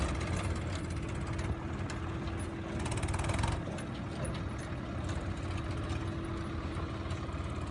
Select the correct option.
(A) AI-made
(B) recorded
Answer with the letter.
B